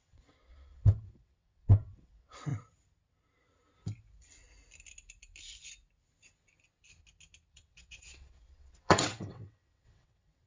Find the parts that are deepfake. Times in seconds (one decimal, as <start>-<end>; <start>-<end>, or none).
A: 0.0-2.5; 7.5-10.5